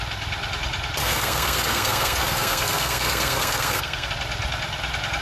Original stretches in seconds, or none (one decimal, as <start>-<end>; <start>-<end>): 0.0-1.0; 4.1-5.2